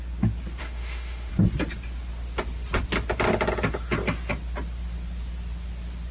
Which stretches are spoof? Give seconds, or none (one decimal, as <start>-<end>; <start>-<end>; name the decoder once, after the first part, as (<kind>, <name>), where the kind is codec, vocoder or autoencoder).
0.6-1.3 (autoencoder, DAC-VAE)